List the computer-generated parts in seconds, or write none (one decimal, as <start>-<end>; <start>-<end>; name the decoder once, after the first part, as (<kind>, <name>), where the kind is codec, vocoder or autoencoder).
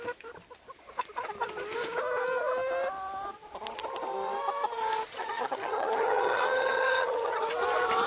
5.1-7.4 (vocoder, HiFi-GAN)